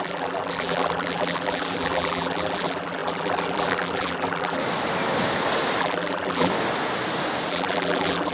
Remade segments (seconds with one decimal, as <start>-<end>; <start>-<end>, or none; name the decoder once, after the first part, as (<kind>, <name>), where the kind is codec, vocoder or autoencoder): 0.0-4.6 (vocoder, BigVGAN v2); 5.8-6.5; 7.5-8.3